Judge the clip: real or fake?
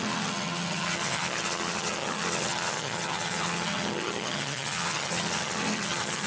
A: fake